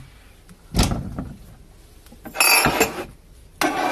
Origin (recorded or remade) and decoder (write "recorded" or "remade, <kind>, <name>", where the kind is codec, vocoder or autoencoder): recorded